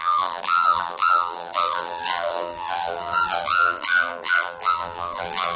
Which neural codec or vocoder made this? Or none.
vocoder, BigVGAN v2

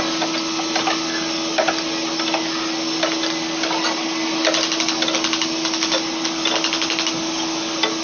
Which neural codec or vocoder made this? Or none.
none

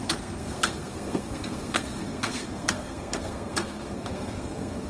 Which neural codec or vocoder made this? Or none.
codec, SNAC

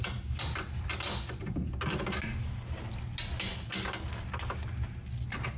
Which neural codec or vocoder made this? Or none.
none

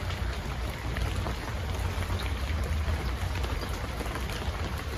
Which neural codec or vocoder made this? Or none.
none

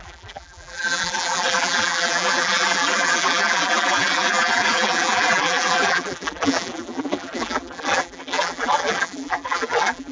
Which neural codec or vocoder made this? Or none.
vocoder, BigVGAN v2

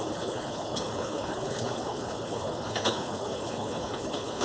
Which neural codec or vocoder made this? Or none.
codec, HILCodec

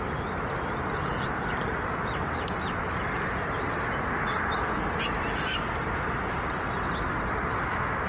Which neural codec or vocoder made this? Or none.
none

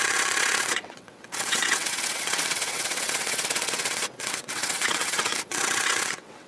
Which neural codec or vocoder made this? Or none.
vocoder, WaveNeXt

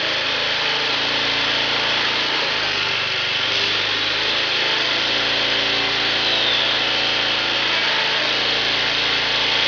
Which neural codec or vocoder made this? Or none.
none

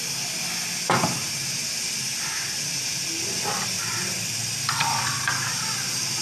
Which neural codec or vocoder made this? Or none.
none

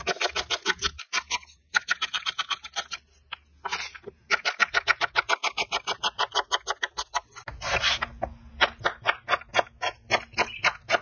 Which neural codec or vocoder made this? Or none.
none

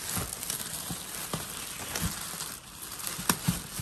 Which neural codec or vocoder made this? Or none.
none